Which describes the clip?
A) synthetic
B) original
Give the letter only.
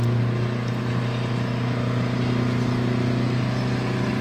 B